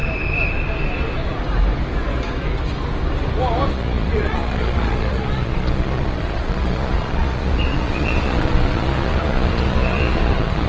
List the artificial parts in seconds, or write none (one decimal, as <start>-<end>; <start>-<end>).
3.7-10.7

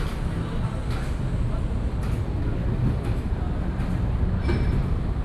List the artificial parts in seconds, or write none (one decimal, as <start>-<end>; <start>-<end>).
none

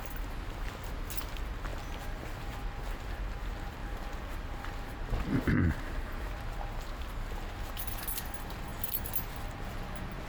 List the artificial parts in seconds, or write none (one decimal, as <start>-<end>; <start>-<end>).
none

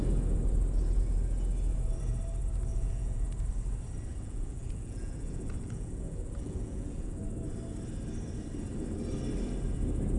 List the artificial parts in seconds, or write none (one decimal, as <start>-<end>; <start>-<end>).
2.7-3.2; 4.1-7.2

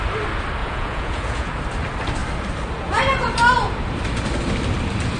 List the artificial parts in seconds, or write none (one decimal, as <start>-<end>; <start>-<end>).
0.6-1.5

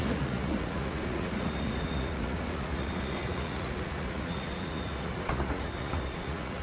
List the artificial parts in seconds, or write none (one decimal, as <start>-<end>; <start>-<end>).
0.0-6.6

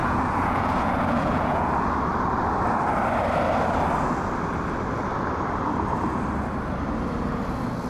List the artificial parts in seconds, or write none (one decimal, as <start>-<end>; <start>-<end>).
0.0-1.7

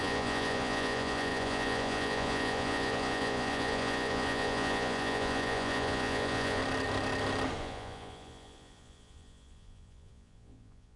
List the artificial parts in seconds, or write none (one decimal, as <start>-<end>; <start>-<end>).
0.0-6.6; 7.6-11.0